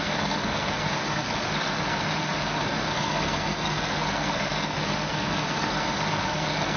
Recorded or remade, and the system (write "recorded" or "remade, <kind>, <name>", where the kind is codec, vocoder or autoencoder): remade, codec, SNAC